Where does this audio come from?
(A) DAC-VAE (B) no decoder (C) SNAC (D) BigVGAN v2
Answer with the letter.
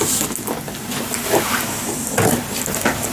B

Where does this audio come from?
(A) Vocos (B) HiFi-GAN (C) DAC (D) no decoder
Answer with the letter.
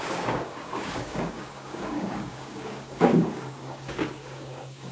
C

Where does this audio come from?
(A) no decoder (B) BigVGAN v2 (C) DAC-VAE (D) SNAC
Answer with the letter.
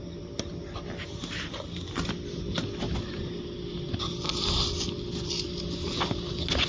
A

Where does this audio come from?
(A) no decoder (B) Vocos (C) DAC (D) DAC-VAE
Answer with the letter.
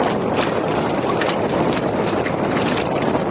A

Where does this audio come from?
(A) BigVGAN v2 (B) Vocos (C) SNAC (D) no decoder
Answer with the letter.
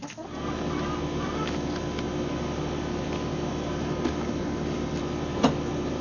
D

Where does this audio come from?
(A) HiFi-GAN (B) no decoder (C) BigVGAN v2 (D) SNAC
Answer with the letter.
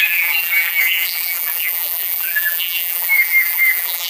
C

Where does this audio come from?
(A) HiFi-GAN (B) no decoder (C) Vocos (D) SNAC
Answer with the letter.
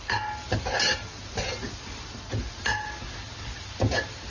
B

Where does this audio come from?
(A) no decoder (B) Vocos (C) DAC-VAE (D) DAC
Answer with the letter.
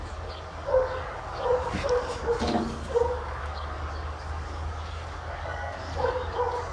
D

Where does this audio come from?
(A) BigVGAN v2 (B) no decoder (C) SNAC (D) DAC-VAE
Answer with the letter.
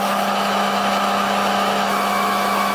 D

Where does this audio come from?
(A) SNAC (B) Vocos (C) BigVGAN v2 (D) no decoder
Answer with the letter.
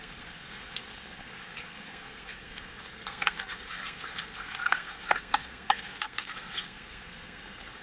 A